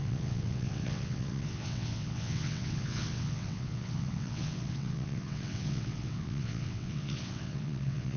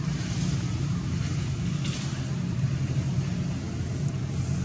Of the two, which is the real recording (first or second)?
second